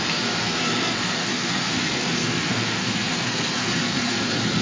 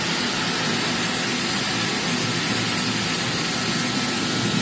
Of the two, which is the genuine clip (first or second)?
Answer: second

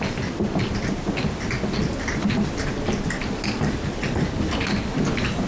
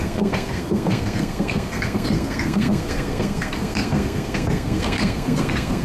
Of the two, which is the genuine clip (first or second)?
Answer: first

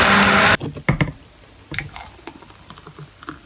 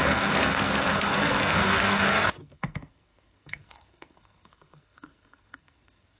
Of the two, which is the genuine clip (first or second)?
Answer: first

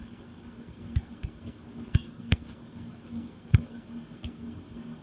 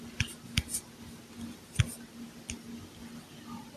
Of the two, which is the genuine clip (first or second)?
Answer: second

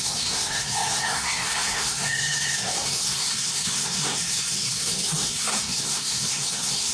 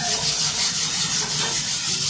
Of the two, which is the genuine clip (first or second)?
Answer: second